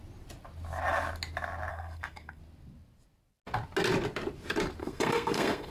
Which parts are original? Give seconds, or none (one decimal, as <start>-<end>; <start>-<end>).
0.0-1.7; 2.4-4.8